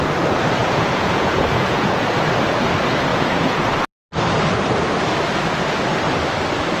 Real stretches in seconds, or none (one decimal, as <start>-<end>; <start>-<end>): 0.0-0.6; 2.0-3.1; 3.7-6.8